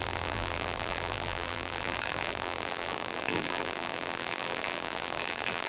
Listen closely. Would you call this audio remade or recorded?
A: remade